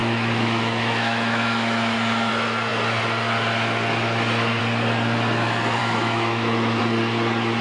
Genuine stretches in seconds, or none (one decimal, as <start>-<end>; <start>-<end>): 2.3-5.8; 6.8-7.6